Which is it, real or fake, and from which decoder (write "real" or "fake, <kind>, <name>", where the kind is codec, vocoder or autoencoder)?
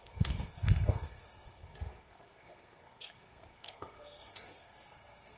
fake, codec, SNAC